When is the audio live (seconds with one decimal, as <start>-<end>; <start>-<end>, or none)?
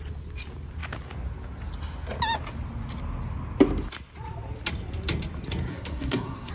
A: 0.0-5.7